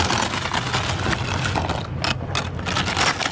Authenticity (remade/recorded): recorded